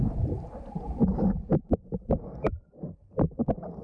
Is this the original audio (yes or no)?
no